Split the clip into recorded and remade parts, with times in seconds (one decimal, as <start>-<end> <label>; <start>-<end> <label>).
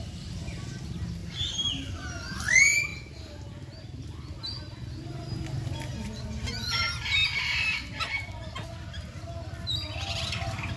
0.0-1.2 recorded; 1.2-1.7 remade; 1.7-10.8 recorded